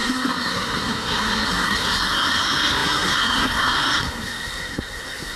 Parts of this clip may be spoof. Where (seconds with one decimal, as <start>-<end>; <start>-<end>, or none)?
0.0-5.4